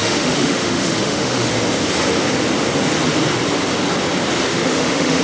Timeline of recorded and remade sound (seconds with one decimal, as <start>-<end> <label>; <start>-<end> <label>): 0.0-1.5 remade; 1.5-4.5 recorded; 4.5-5.2 remade